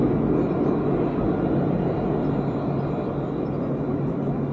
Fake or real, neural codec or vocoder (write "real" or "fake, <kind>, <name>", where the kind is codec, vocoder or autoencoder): real